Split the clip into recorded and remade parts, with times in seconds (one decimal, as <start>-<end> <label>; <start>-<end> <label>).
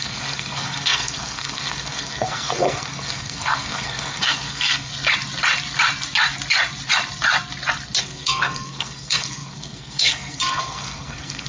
0.0-4.9 remade; 4.9-8.0 recorded; 8.0-11.5 remade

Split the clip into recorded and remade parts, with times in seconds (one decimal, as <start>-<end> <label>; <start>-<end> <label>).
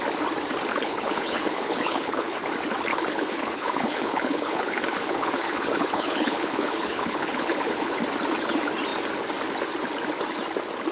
0.0-0.7 recorded; 0.7-2.5 remade; 2.5-2.9 recorded; 2.9-8.0 remade; 8.0-10.9 recorded